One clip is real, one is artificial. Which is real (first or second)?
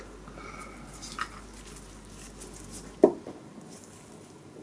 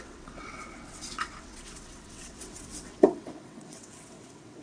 first